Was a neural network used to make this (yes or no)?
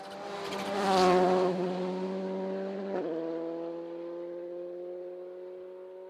no